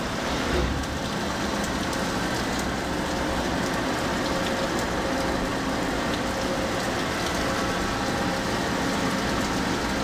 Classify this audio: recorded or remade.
recorded